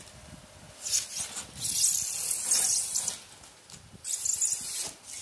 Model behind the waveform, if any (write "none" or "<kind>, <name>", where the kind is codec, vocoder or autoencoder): none